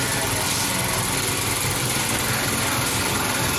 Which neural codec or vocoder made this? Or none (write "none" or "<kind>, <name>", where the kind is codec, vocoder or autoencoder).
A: none